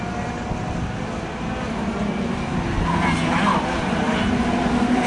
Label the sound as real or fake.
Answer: real